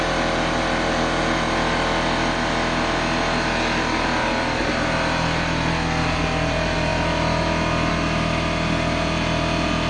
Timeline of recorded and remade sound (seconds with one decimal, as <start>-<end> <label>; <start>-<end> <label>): 0.0-9.9 recorded